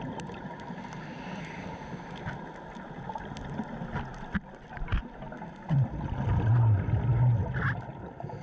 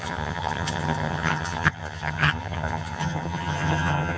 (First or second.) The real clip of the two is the first